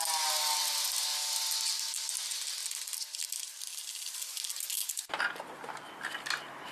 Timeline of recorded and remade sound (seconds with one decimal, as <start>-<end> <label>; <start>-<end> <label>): 0.0-6.7 recorded